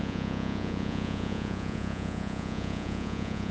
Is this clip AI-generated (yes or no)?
yes